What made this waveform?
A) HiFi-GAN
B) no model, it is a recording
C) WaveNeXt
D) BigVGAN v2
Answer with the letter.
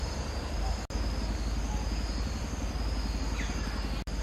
B